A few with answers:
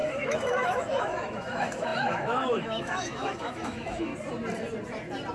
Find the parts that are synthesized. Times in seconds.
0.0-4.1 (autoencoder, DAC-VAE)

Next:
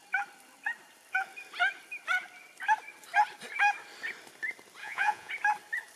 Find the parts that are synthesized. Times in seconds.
4.8-5.3 (vocoder, Vocos)

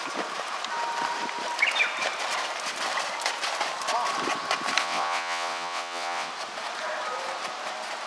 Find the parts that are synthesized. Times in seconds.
4.8-6.3 (vocoder, WaveNeXt)

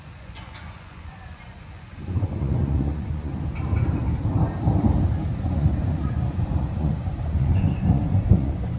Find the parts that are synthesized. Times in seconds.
0.0-3.3 (vocoder, Vocos); 5.4-8.8

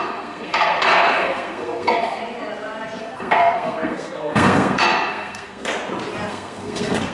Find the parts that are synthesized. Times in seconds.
0.0-2.2 (codec, SNAC); 3.0-5.7; 6.3-7.1

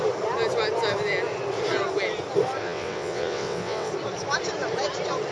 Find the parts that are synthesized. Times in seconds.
2.6-3.9 (vocoder, WaveNeXt)